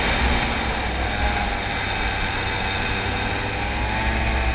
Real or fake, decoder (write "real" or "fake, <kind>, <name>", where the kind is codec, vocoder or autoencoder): real